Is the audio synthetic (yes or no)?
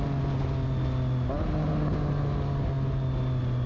no